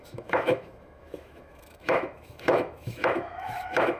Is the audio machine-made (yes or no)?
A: yes